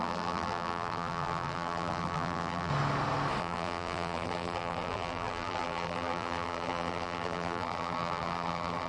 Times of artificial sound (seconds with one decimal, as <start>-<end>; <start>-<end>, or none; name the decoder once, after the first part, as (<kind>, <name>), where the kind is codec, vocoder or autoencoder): 0.0-2.7 (vocoder, BigVGAN v2); 3.4-8.9